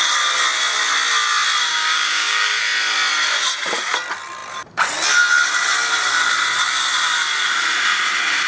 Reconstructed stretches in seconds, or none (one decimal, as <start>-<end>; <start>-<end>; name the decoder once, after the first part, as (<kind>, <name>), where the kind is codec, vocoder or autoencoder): 1.7-2.6 (codec, DAC)